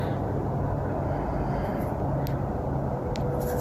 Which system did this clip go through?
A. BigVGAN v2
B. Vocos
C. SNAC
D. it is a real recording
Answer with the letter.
D